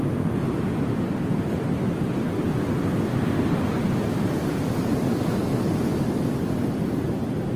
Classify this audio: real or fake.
real